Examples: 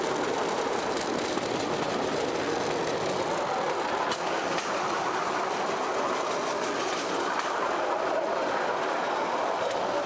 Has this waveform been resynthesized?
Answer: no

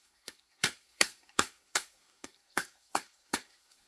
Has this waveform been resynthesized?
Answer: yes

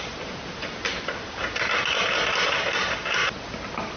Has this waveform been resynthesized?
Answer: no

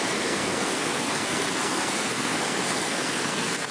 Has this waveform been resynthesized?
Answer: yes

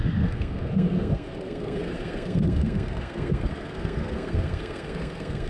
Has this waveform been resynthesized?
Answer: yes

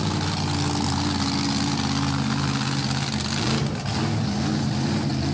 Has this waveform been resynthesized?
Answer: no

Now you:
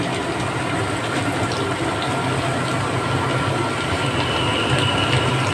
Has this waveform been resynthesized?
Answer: no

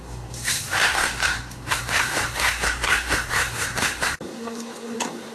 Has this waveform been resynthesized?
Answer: yes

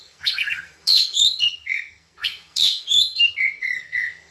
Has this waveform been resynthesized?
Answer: yes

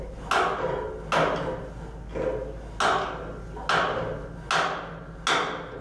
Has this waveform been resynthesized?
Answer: no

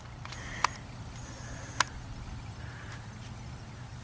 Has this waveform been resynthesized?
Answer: no